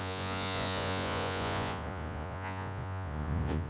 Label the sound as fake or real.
fake